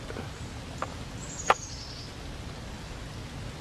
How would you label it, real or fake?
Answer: real